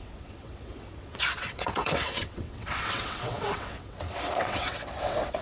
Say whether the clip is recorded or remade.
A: remade